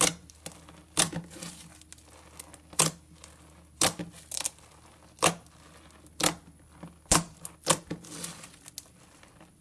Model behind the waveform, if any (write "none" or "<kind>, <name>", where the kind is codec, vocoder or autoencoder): none